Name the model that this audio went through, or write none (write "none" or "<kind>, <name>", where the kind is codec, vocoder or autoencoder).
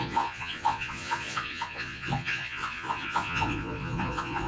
vocoder, Vocos